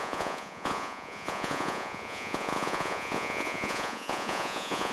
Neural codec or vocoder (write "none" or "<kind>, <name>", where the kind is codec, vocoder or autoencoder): vocoder, Vocos